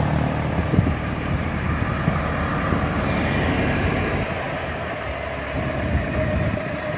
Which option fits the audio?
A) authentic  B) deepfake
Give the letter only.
B